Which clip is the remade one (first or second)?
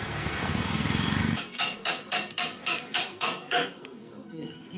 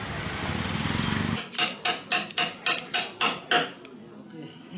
first